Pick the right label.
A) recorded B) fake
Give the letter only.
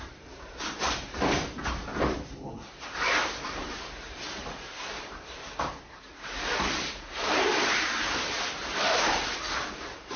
B